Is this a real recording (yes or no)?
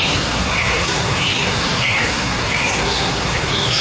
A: no